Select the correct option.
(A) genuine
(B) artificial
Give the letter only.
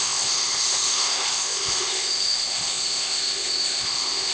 B